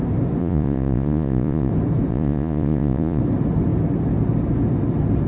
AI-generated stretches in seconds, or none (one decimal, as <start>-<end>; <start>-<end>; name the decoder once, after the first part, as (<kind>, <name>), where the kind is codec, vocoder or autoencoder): 0.4-1.7 (vocoder, Vocos); 2.1-3.2